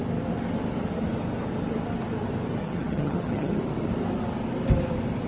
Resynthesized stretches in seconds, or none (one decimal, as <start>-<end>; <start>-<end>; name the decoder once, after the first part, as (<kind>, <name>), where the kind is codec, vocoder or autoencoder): 2.6-3.6 (vocoder, HiFi-GAN)